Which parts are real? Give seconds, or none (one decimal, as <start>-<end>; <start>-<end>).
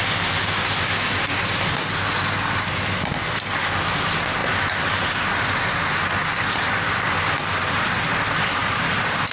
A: 0.0-9.3